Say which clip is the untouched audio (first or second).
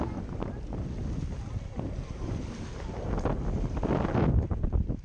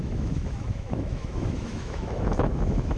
first